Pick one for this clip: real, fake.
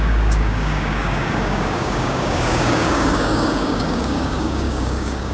fake